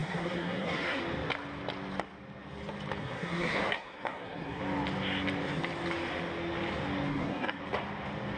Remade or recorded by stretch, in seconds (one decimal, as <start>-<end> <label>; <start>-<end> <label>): 0.0-1.0 remade; 1.0-3.0 recorded; 3.0-4.6 remade; 4.6-7.1 recorded; 7.1-7.6 remade; 7.6-8.4 recorded

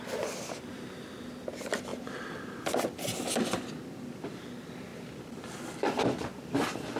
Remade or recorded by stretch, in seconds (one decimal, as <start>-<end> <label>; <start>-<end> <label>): 0.0-7.0 recorded

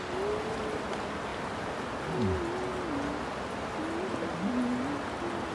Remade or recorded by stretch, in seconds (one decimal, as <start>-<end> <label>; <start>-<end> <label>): 0.0-5.5 recorded